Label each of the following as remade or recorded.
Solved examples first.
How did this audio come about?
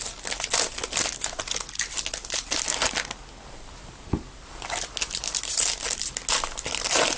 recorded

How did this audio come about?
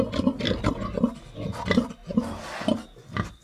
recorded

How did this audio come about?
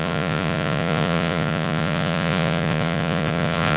remade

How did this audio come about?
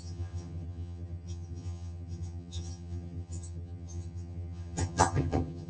remade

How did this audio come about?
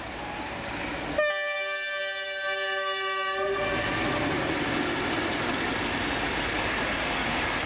recorded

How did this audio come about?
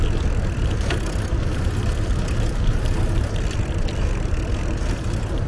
recorded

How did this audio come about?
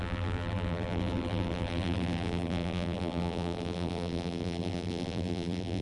remade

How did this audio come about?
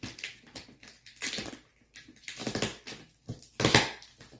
recorded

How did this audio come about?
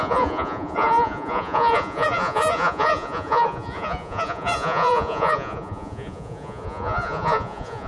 remade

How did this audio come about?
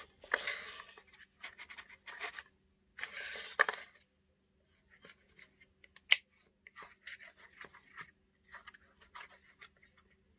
recorded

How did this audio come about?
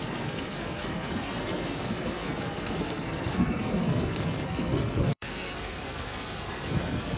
remade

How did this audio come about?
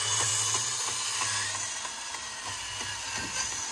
recorded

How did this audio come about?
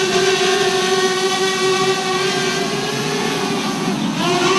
remade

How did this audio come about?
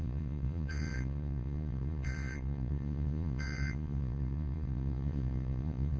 remade